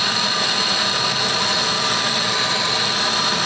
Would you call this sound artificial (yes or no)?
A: no